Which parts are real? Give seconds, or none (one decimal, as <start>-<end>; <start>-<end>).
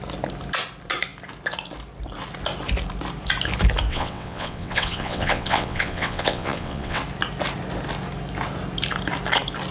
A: 0.0-3.9; 7.0-9.7